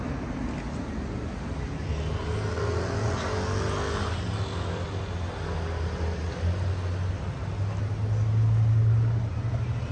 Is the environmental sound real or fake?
real